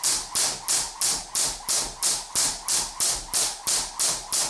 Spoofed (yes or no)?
no